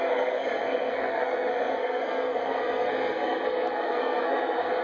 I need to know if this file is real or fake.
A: fake